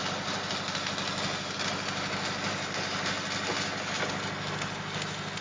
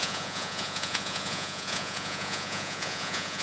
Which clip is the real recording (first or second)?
first